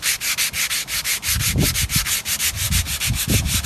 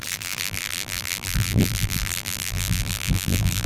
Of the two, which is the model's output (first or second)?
second